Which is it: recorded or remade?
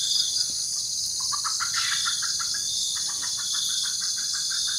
recorded